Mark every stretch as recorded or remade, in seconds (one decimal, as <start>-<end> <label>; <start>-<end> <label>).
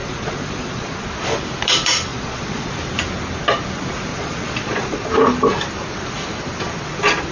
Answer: 0.0-1.1 remade; 1.1-2.1 recorded; 2.1-2.7 remade; 2.7-4.1 recorded; 4.1-5.1 remade; 5.1-7.3 recorded